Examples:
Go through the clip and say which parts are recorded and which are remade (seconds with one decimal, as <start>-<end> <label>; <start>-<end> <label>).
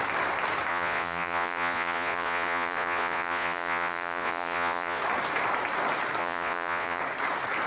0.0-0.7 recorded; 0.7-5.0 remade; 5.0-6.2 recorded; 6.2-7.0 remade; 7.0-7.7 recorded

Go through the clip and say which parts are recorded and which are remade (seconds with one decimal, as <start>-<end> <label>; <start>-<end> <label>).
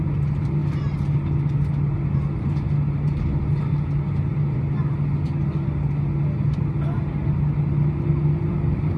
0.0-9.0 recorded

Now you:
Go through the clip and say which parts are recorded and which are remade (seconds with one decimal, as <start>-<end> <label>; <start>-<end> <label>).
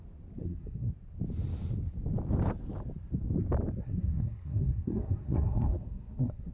0.0-0.4 recorded; 0.4-0.9 remade; 0.9-3.8 recorded; 3.8-6.5 remade